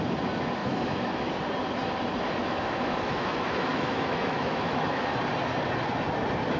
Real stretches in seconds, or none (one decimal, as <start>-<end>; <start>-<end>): 0.0-0.6; 1.3-2.4; 5.0-6.6